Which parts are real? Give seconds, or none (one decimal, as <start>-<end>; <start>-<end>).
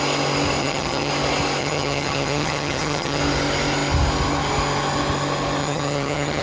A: 0.0-0.6; 1.1-1.6; 3.2-5.6